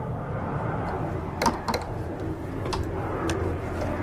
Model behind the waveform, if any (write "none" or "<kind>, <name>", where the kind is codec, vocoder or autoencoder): none